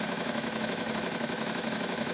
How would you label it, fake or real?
fake